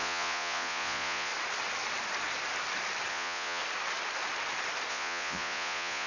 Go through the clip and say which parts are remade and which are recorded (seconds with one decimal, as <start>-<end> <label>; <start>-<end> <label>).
0.0-1.3 remade; 1.3-3.1 recorded; 3.1-3.6 remade; 3.6-4.9 recorded; 4.9-6.1 remade